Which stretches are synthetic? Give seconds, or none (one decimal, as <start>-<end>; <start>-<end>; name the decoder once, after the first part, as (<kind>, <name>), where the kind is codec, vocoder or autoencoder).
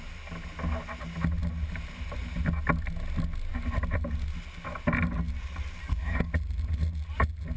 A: 5.8-6.3 (codec, DAC)